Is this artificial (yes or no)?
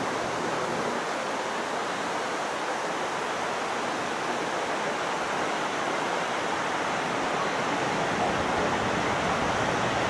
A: no